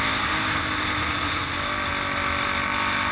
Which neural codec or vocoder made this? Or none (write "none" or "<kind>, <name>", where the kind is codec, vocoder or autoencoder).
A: none